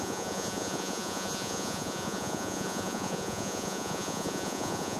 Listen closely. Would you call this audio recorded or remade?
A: remade